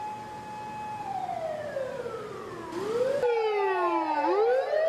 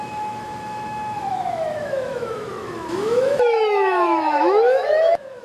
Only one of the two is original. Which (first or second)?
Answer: first